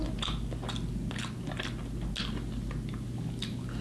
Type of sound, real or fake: real